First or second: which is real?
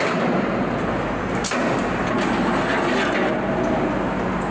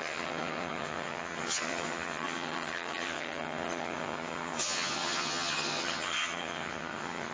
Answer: first